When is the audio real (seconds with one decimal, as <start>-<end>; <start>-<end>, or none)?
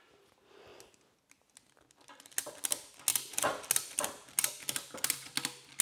0.0-5.8